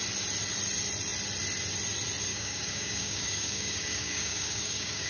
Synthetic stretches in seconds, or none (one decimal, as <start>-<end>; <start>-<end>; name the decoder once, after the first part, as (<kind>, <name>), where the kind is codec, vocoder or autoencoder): 2.3-5.1 (codec, DAC)